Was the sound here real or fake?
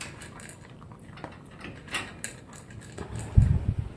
real